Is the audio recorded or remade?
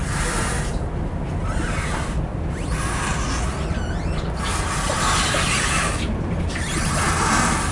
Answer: recorded